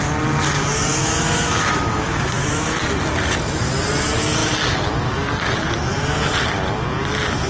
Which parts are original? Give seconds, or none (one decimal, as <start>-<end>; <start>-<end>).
0.0-1.0; 2.8-7.5